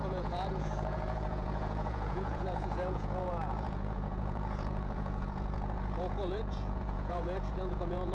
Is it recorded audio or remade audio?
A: remade